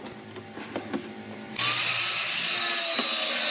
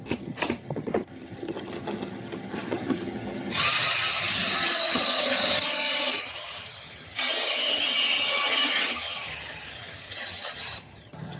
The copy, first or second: second